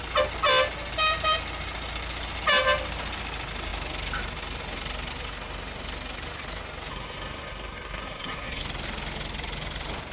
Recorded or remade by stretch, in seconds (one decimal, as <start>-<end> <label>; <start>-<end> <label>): 0.0-6.9 recorded; 6.9-8.6 remade; 8.6-10.1 recorded